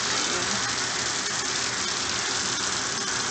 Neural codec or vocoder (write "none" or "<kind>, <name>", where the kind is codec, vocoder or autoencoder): none